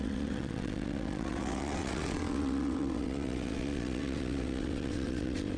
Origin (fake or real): fake